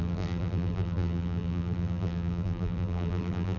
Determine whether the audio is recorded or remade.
remade